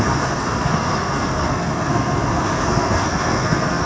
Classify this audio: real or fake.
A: fake